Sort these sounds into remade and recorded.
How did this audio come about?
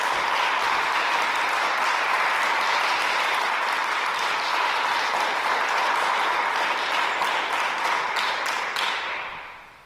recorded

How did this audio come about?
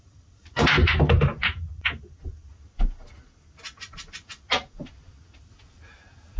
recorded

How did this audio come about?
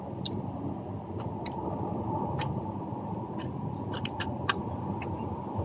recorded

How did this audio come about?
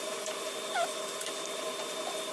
recorded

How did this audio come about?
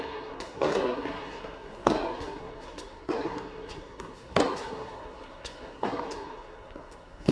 remade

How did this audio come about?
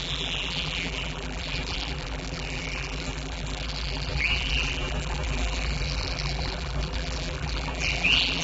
remade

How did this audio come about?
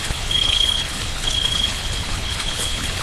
remade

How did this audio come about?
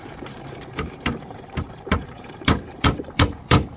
remade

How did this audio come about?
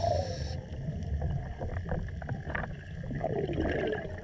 recorded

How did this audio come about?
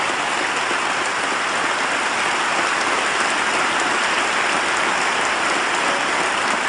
recorded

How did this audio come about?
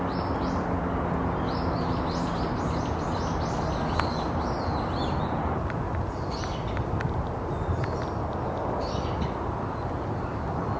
recorded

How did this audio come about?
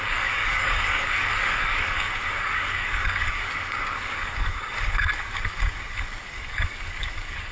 remade